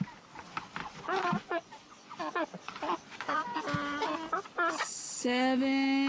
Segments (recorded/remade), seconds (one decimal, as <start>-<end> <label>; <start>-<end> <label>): 0.0-0.8 recorded; 0.8-3.6 remade; 3.6-6.1 recorded